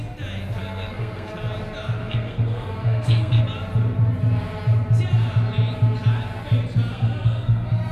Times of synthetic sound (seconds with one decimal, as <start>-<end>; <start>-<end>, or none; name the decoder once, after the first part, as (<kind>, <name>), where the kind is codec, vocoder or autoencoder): 0.6-1.3 (codec, SNAC); 2.0-3.4; 6.9-7.9

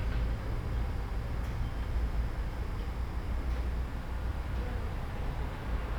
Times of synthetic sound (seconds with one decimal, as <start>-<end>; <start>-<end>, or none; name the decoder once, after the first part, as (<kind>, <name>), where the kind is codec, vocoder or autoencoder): 4.3-5.5 (vocoder, BigVGAN v2)

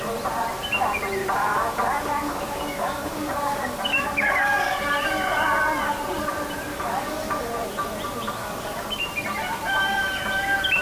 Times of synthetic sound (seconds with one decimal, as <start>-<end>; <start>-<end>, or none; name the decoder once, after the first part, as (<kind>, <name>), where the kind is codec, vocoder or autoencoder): 1.2-4.8 (codec, DAC); 6.7-7.5; 8.4-9.1

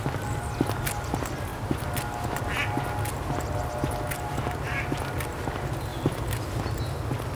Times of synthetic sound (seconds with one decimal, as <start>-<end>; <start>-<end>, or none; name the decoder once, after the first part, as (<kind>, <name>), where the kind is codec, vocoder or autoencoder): 5.9-6.6 (vocoder, BigVGAN v2)

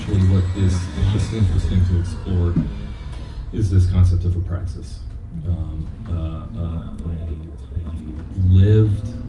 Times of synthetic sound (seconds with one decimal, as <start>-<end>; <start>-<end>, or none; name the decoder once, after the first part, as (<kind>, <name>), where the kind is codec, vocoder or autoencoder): 0.7-1.7 (codec, SNAC); 6.7-8.0

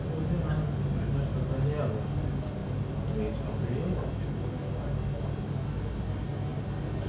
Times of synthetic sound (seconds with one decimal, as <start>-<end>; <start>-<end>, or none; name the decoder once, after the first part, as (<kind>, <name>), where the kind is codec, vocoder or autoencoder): none

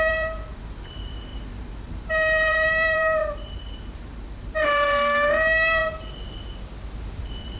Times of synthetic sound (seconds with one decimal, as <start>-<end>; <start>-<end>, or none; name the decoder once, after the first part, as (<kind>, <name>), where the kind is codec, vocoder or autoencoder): 0.0-5.8 (vocoder, BigVGAN v2); 7.0-7.6

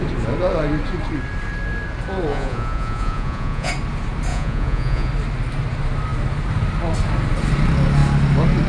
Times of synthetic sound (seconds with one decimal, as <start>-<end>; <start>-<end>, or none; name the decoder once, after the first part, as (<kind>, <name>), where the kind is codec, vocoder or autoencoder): 2.3-3.7 (vocoder, Vocos); 4.3-5.1